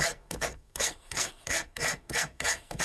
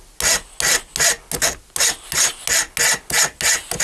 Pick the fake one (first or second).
first